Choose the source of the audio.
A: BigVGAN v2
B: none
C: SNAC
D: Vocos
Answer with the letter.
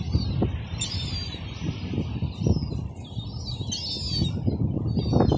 B